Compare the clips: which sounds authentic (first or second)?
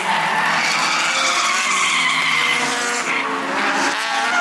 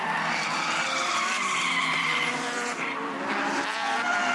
first